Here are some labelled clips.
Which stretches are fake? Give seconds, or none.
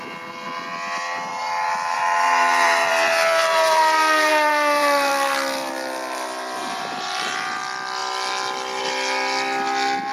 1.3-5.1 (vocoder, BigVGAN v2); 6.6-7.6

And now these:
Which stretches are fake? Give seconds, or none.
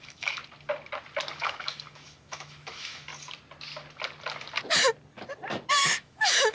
0.0-0.4 (autoencoder, DAC-VAE); 1.4-3.1; 5.7-6.5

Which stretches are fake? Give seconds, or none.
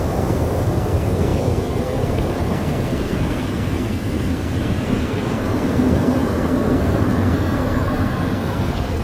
0.0-9.0 (codec, SNAC)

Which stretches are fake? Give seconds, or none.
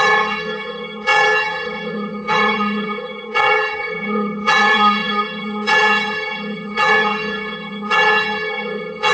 0.0-9.1 (vocoder, HiFi-GAN)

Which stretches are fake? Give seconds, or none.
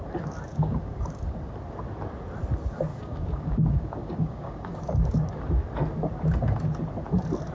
0.5-1.2 (codec, DAC); 2.9-5.4